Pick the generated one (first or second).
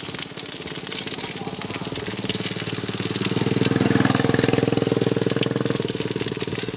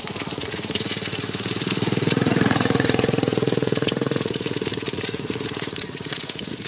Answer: second